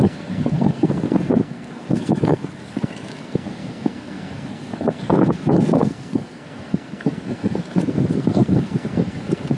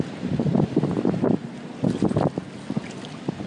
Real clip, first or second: second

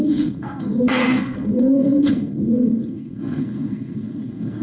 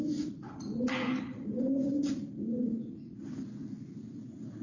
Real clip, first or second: second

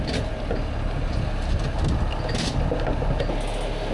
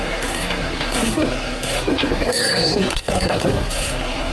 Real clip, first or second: first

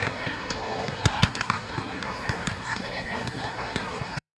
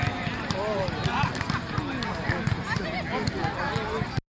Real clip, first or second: second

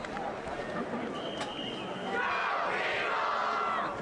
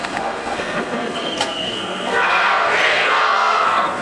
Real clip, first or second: first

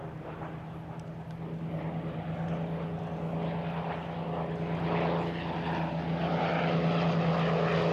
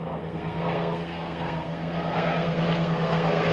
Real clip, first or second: first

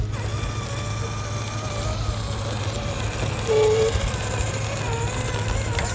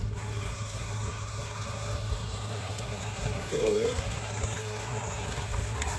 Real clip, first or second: first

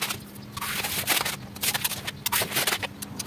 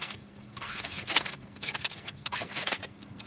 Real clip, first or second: first